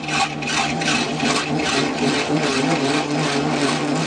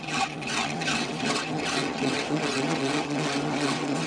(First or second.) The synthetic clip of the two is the second